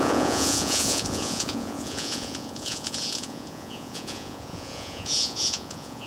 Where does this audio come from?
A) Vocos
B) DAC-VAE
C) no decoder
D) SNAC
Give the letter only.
A